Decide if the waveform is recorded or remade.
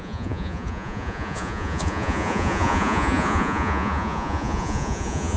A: remade